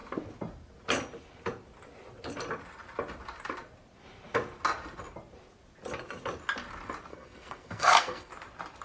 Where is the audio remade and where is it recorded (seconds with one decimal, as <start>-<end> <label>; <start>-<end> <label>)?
0.0-7.1 recorded; 7.1-8.3 remade; 8.3-8.8 recorded